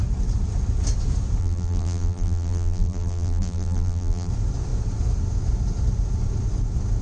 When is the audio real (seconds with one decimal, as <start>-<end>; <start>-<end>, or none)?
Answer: 0.0-1.4; 4.3-7.0